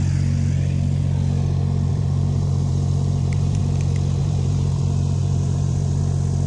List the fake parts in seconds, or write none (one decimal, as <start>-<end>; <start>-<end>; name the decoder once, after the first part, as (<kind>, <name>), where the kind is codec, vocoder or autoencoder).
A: 1.9-3.6 (vocoder, BigVGAN v2); 4.2-4.8; 5.2-6.0